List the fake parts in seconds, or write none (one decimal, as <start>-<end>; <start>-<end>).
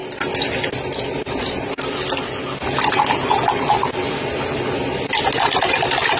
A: none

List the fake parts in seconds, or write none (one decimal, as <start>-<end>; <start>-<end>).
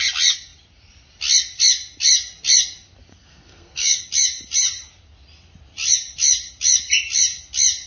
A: 3.1-4.0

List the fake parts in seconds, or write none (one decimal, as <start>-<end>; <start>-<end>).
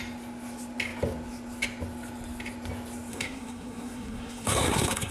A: 3.1-5.1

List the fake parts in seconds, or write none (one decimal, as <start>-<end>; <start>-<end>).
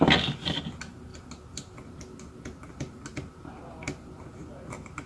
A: none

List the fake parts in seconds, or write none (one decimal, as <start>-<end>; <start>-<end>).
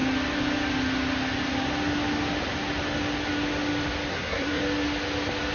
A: 4.1-4.6